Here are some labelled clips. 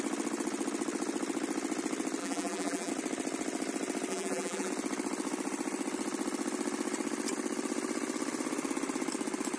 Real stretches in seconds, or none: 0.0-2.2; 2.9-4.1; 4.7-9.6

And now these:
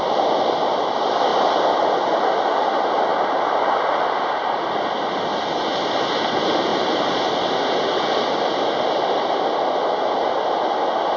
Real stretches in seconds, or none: 0.0-1.3; 1.9-3.1; 4.5-6.7; 7.5-11.2

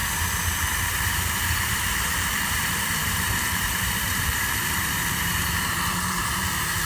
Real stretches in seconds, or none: 0.0-0.7

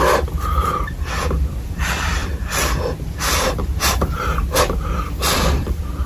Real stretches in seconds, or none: 0.6-1.2

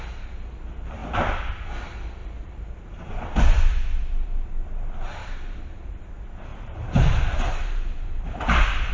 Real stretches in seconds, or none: 0.0-2.2; 3.1-5.2; 6.0-6.5; 8.4-8.9

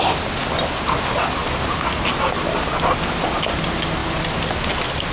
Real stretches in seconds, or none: 0.0-5.1

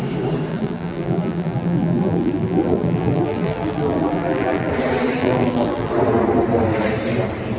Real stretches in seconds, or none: 0.0-0.5; 4.7-5.2; 5.9-7.6